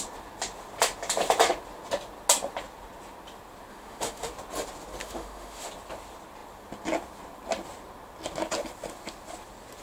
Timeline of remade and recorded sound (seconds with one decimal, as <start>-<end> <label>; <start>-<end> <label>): 0.0-3.7 recorded; 3.7-4.3 remade; 4.3-5.0 recorded; 5.0-5.7 remade; 5.7-9.8 recorded